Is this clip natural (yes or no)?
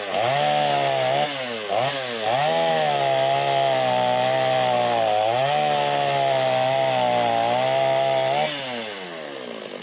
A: yes